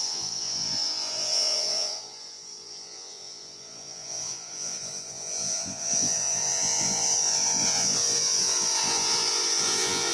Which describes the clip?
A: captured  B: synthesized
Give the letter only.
B